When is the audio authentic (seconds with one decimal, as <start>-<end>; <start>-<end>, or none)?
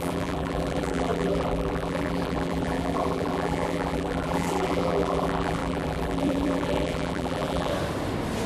7.7-8.5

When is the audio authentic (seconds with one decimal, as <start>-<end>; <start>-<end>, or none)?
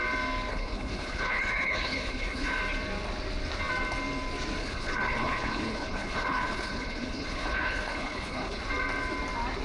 0.0-0.5; 2.6-4.6; 8.6-9.6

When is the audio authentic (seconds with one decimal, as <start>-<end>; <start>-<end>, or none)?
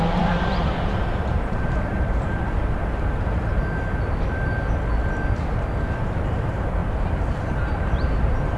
4.5-6.3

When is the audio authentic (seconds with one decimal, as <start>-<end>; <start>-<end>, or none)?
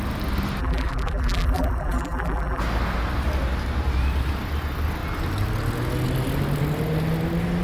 0.0-0.6; 2.6-7.6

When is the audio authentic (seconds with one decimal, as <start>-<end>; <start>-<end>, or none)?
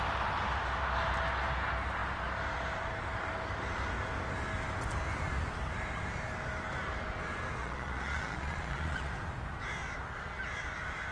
0.0-7.6; 9.1-11.1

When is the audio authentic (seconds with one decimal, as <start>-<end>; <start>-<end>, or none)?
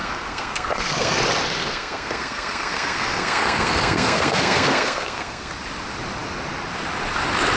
1.2-1.6; 5.5-7.6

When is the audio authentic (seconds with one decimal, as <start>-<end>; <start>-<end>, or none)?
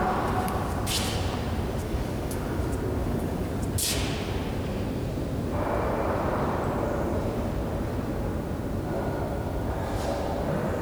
0.0-1.8; 2.6-3.0; 3.5-10.8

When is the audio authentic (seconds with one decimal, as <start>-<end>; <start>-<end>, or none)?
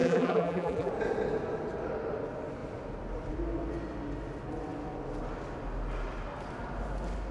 0.9-7.3